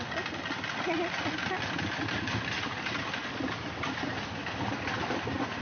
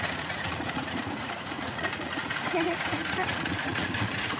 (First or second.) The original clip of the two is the first